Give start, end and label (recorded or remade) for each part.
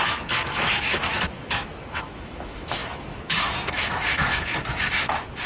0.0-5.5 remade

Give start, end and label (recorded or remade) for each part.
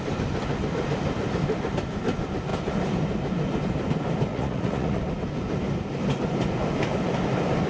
0.0-4.3 recorded; 4.3-5.0 remade; 5.0-7.7 recorded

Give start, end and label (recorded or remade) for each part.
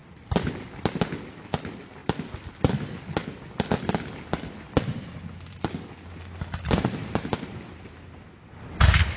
0.0-9.2 recorded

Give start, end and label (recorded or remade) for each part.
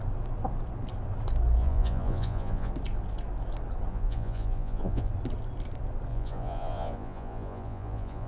0.0-1.6 recorded; 1.6-2.7 remade; 2.7-3.9 recorded; 3.9-5.1 remade; 5.1-6.1 recorded; 6.1-8.3 remade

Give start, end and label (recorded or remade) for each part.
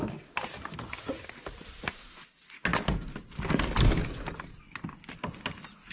0.0-5.9 recorded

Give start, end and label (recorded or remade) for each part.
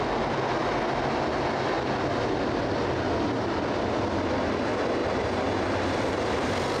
0.0-5.0 recorded; 5.0-6.2 remade; 6.2-6.8 recorded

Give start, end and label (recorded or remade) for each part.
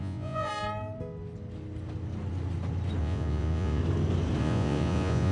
0.0-0.5 remade; 0.5-3.0 recorded; 3.0-3.8 remade; 3.8-4.4 recorded; 4.4-5.3 remade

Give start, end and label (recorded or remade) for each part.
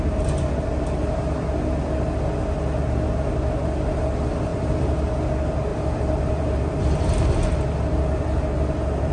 0.0-4.5 recorded; 4.5-5.1 remade; 5.1-5.7 recorded; 5.7-8.4 remade; 8.4-9.1 recorded